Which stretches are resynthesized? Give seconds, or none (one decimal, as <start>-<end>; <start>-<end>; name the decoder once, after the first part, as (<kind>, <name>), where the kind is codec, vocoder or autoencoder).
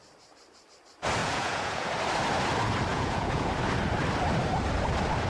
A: 1.2-1.9 (vocoder, Vocos); 2.9-3.5